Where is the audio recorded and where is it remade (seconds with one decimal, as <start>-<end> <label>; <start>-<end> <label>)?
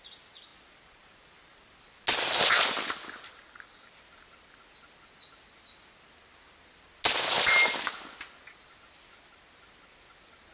0.0-10.5 recorded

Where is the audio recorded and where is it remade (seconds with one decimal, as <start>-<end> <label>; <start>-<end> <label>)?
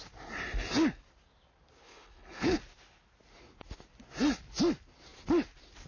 0.0-1.8 recorded; 1.8-2.6 remade; 2.6-5.9 recorded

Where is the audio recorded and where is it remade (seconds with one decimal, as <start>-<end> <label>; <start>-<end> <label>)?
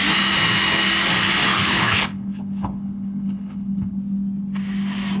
0.0-1.5 recorded; 1.5-4.0 remade; 4.0-5.2 recorded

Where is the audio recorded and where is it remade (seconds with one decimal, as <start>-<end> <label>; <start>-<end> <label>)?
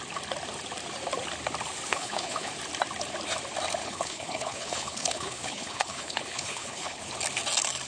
0.0-1.9 recorded; 1.9-2.5 remade; 2.5-3.8 recorded; 3.8-7.1 remade; 7.1-7.9 recorded